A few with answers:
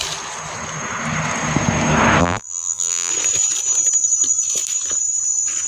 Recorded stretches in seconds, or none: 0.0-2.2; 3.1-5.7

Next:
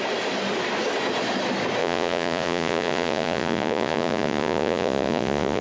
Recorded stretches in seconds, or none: 0.0-1.8

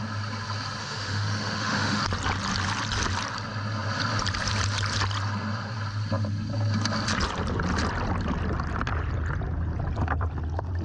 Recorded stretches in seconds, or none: 0.0-0.8; 2.0-10.8

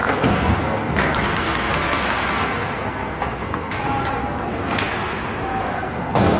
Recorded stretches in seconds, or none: 3.8-4.2; 4.9-5.5

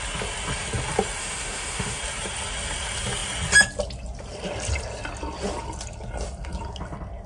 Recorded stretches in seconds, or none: 0.0-1.2; 2.0-7.3

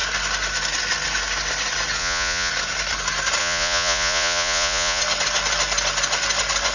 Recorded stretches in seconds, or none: 0.0-2.0; 2.5-3.4; 5.0-6.7

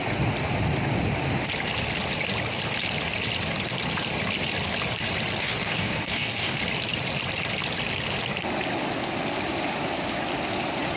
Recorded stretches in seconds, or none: 0.0-5.4; 6.6-11.0